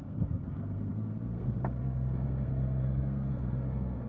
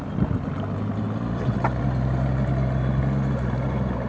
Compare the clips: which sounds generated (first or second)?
first